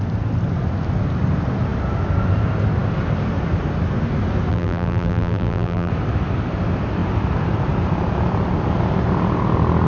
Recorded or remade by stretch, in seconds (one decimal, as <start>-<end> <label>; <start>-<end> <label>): 0.0-4.5 recorded; 4.5-5.9 remade; 5.9-9.9 recorded